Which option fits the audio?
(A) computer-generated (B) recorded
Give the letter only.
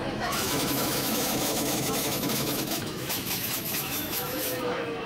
A